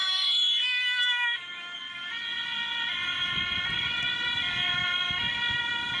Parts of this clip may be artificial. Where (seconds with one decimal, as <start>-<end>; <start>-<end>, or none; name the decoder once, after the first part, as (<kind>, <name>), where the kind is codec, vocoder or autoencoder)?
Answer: 0.0-2.1 (codec, DAC)

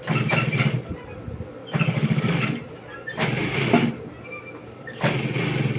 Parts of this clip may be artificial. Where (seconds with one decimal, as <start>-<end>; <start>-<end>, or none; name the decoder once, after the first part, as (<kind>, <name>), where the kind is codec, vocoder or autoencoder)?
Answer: 1.6-2.3 (codec, DAC); 4.6-5.1

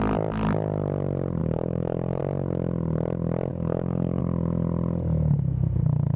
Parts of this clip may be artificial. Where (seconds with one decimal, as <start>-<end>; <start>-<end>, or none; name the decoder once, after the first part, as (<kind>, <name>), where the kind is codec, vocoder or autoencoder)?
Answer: 1.4-2.2 (codec, DAC); 3.5-4.2

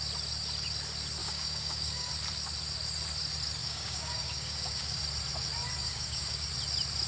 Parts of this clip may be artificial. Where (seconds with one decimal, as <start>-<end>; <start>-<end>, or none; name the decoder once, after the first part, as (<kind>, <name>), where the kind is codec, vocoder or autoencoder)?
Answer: 1.2-2.1 (codec, DAC); 3.6-5.0; 5.8-6.5